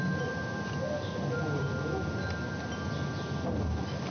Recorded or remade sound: recorded